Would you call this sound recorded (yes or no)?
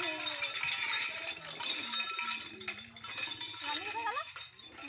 yes